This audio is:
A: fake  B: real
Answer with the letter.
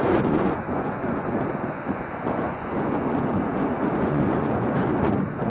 A